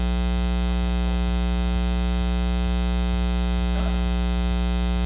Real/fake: real